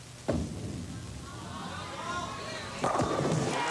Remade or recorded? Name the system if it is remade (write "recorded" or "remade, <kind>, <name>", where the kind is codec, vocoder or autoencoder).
recorded